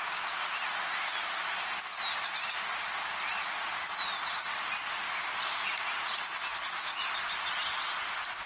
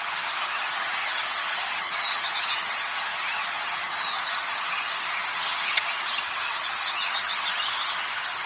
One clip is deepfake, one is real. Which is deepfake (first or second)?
second